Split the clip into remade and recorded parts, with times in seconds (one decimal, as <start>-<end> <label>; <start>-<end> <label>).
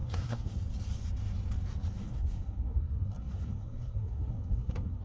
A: 0.0-0.6 remade; 0.6-2.0 recorded; 2.0-5.0 remade